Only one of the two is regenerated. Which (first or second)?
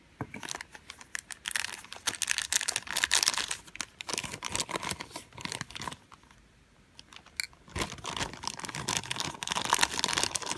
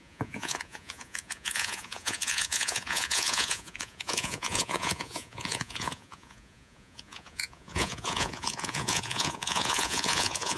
second